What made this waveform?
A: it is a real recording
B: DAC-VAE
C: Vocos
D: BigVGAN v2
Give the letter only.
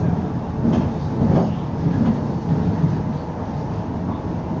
A